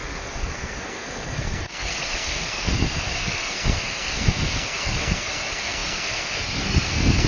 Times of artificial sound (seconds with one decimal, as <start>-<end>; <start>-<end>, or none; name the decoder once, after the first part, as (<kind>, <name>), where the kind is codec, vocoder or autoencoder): 0.0-7.3 (codec, SNAC)